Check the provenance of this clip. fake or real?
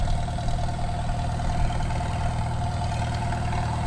real